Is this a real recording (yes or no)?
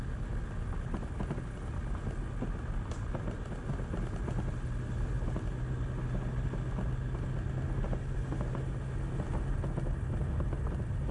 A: yes